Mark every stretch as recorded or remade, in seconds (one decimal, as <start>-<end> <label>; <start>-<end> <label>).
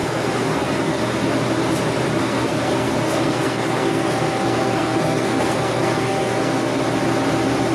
0.0-1.0 remade; 1.0-2.2 recorded; 2.2-6.8 remade; 6.8-7.7 recorded